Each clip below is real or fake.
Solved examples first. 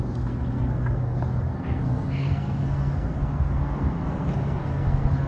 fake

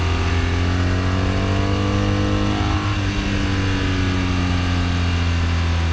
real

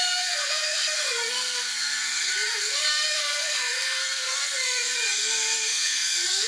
fake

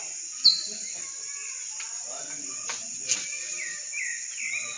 real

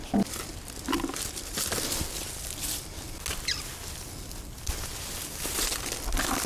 real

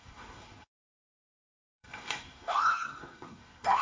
fake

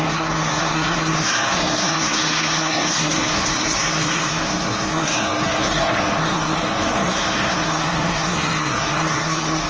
fake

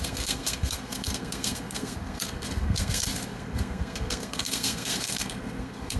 fake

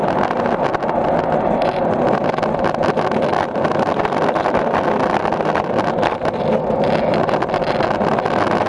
real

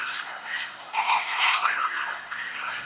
fake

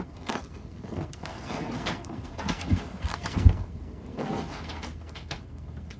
fake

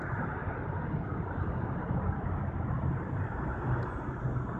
real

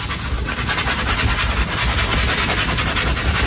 real